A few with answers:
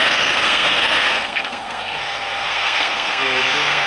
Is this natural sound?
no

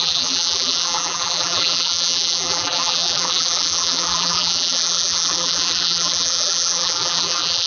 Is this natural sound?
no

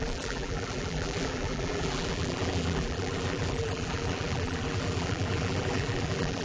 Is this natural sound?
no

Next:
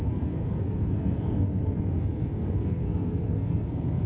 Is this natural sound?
no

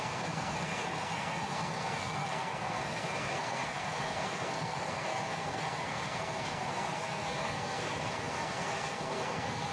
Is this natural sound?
no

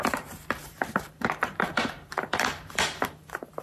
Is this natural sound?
no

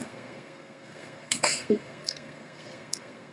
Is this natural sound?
no